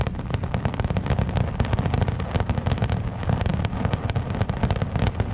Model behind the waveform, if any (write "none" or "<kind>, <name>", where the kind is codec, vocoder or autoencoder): none